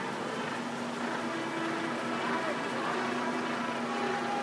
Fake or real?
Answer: real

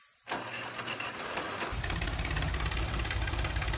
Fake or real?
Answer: real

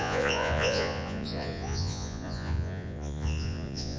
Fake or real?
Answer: fake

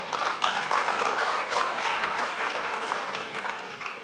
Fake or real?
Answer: fake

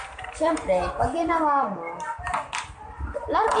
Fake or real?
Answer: real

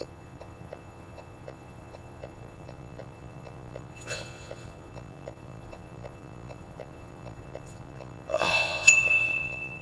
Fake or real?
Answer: fake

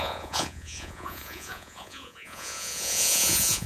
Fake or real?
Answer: fake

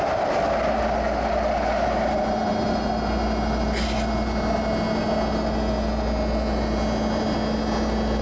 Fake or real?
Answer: real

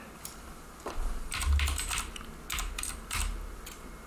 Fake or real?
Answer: real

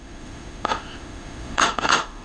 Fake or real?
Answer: fake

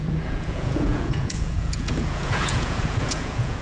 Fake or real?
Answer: fake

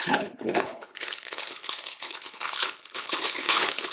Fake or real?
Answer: fake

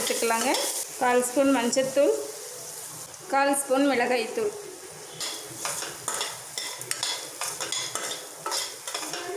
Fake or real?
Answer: real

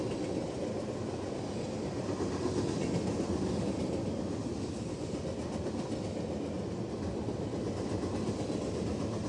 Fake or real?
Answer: real